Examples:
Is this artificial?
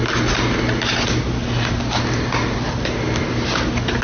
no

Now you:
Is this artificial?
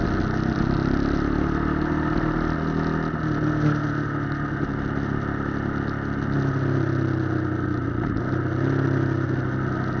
no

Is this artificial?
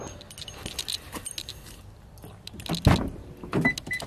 no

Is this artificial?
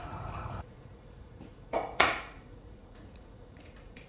yes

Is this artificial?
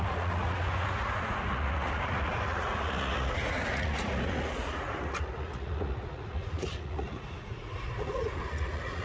yes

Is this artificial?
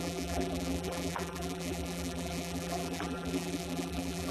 yes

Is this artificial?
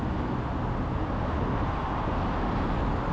no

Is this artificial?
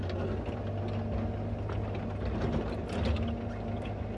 no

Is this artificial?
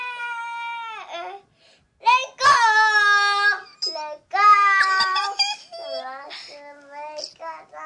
no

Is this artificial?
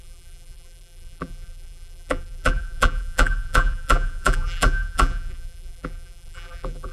yes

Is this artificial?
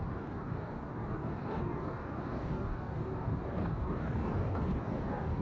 yes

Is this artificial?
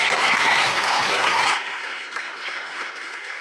yes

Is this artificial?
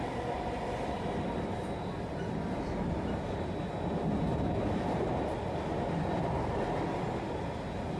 no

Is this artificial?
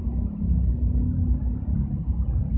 no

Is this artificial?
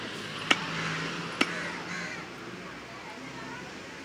no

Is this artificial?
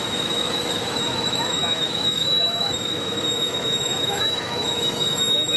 yes